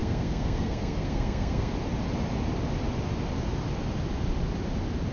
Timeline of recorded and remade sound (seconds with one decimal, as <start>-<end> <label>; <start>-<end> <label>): 0.0-1.7 remade; 1.7-5.1 recorded